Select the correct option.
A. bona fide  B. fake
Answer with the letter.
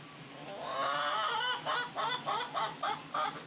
A